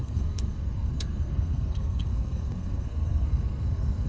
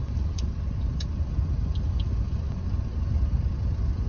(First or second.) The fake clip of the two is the first